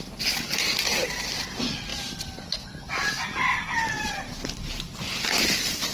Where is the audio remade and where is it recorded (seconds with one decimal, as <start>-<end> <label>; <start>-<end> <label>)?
0.0-1.9 recorded; 1.9-5.4 remade; 5.4-5.9 recorded